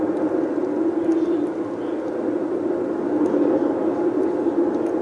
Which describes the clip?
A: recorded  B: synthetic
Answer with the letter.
A